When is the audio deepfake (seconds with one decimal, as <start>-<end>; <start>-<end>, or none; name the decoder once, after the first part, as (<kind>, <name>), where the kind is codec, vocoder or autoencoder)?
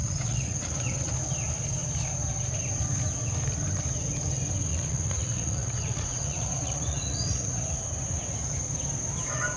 0.0-1.1 (vocoder, Vocos); 4.7-7.7